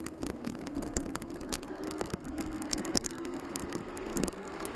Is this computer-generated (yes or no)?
yes